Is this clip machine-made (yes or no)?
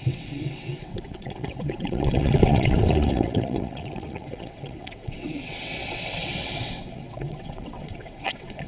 yes